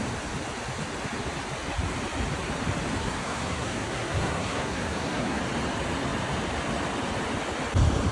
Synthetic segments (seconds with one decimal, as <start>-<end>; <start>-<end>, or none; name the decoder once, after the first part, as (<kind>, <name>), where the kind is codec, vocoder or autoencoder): 3.0-5.4 (codec, SNAC)